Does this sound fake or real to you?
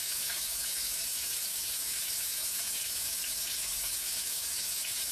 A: fake